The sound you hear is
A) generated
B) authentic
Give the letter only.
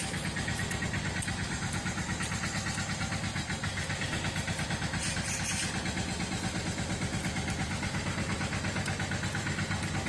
B